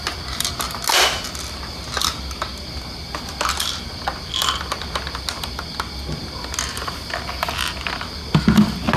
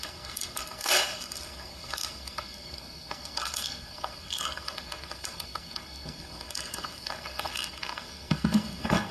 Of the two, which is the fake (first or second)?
second